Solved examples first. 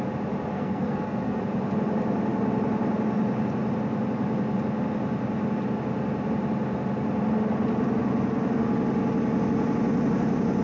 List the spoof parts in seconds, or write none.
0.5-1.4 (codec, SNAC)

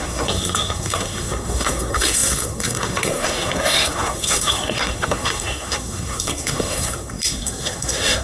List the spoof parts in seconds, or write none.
0.0-8.2 (codec, SNAC)

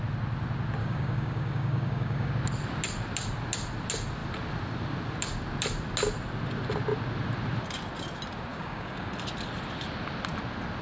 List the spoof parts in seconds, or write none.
0.8-2.3 (codec, DAC); 8.5-9.1